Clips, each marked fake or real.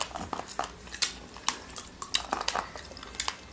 real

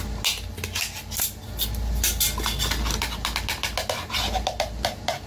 real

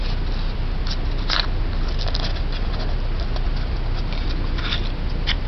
real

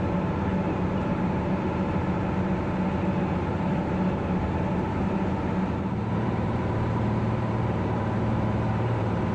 fake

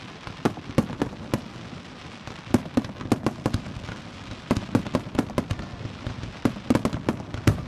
real